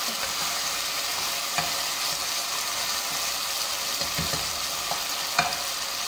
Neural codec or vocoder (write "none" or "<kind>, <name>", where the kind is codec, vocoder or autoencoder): none